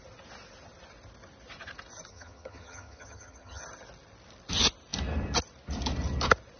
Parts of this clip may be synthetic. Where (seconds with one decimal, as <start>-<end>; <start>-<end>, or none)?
2.1-3.6